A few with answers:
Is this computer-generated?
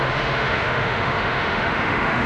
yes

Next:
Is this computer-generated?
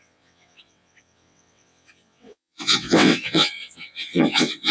yes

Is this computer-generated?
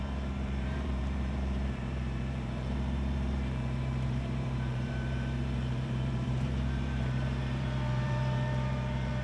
yes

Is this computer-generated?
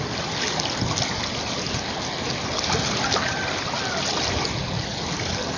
no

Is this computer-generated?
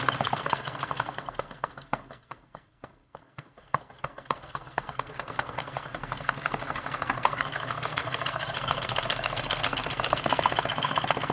yes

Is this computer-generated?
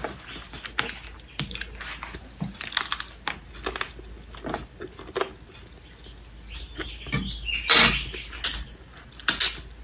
no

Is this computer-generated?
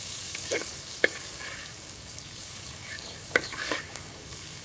yes